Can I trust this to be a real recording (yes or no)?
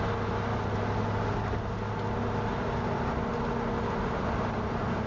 yes